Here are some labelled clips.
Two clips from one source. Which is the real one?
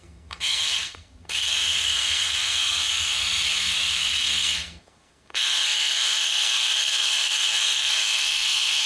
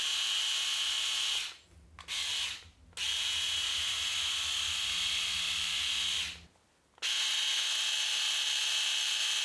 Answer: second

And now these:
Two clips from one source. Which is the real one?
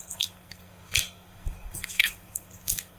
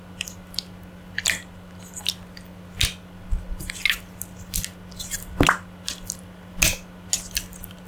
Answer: second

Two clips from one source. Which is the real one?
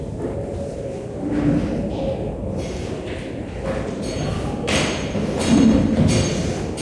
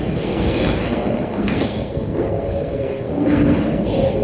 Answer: first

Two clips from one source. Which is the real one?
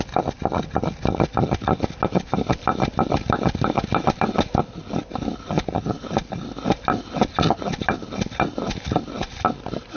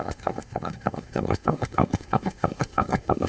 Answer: first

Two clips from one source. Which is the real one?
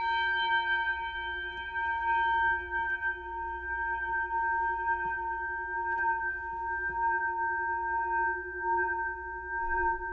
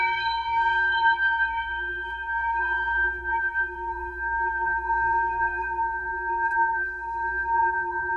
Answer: first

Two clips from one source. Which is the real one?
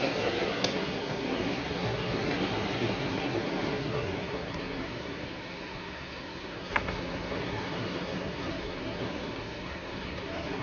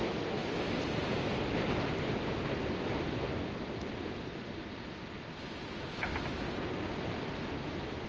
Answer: second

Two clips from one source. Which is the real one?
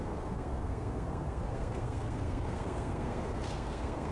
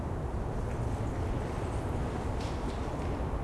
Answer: second